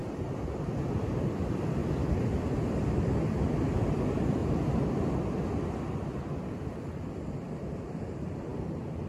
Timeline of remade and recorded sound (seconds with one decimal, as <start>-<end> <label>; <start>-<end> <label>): 0.0-0.9 recorded; 0.9-1.8 remade; 1.8-3.6 recorded; 3.6-4.4 remade; 4.4-5.7 recorded; 5.7-9.1 remade